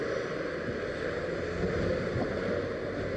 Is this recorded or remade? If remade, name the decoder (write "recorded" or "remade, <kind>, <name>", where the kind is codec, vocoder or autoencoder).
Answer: recorded